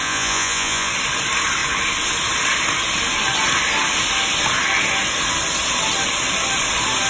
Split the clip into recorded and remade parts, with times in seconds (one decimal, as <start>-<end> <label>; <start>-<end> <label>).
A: 0.0-0.9 remade; 0.9-7.1 recorded